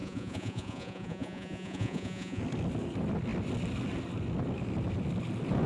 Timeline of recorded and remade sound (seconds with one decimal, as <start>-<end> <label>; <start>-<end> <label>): 0.0-2.4 remade; 2.4-5.7 recorded